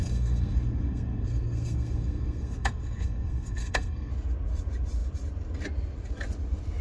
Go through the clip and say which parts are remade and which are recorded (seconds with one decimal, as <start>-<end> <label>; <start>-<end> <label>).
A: 0.0-4.1 remade; 4.1-6.8 recorded